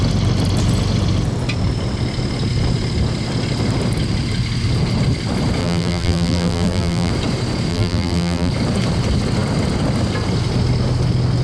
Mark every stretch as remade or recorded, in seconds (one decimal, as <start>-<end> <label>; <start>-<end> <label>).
0.0-5.6 recorded; 5.6-7.1 remade; 7.1-7.7 recorded; 7.7-8.5 remade; 8.5-11.4 recorded